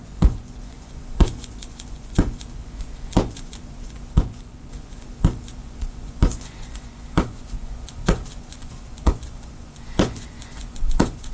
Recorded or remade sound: remade